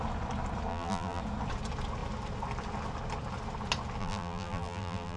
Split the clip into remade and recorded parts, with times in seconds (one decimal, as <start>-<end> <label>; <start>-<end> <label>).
0.0-0.7 recorded; 0.7-1.2 remade; 1.2-4.0 recorded; 4.0-5.2 remade